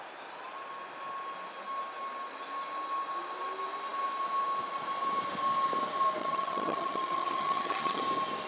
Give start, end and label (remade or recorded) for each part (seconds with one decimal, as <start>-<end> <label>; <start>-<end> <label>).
0.0-6.2 recorded; 6.2-8.0 remade; 8.0-8.5 recorded